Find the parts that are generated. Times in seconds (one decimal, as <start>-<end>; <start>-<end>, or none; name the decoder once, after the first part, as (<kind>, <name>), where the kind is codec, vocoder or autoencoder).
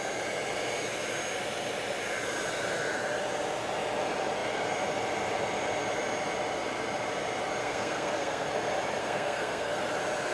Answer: 7.6-8.5 (codec, SNAC); 9.0-9.8